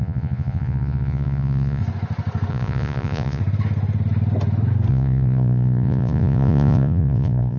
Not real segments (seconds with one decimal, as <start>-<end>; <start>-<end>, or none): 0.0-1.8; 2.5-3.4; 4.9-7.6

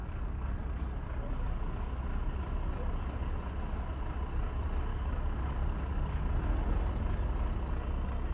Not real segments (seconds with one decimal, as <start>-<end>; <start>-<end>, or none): 0.0-0.6; 4.9-6.3

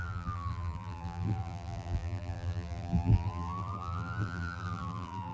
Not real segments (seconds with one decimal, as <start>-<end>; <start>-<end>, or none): 0.0-5.3